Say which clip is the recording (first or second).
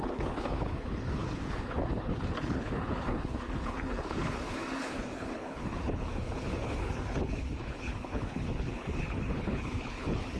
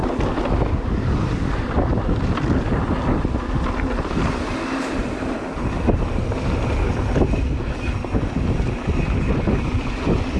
second